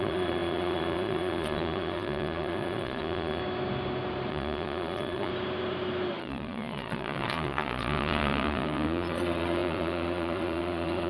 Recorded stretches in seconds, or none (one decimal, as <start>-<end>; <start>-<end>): 3.4-4.3; 5.3-6.2